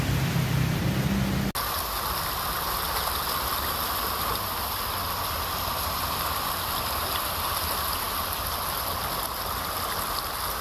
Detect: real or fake real